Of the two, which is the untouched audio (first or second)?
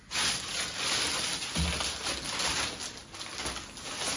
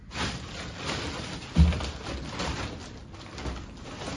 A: first